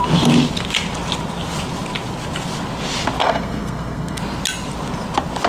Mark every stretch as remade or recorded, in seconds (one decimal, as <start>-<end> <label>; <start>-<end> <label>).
0.0-3.2 recorded; 3.2-4.2 remade; 4.2-5.5 recorded